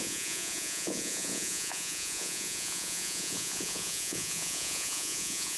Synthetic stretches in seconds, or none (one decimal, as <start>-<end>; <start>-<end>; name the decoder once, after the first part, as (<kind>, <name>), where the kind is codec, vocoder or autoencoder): 0.0-5.6 (vocoder, Vocos)